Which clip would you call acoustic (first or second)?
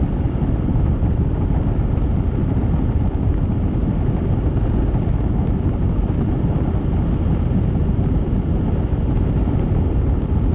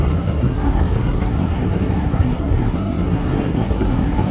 first